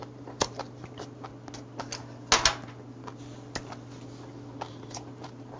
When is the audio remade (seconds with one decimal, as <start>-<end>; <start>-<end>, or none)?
0.0-1.3; 4.7-5.6